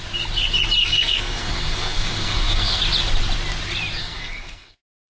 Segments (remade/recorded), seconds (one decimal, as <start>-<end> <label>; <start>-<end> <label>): 0.0-0.8 recorded; 0.8-2.8 remade; 2.8-4.0 recorded; 4.0-5.1 remade